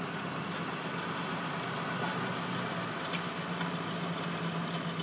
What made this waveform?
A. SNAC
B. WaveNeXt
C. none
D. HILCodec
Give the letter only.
C